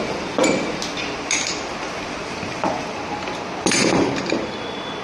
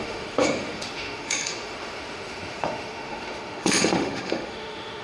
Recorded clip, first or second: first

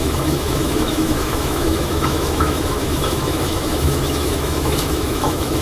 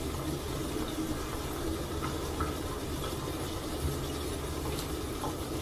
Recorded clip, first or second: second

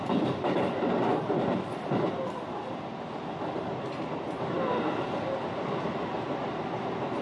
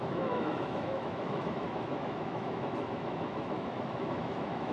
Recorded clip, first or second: first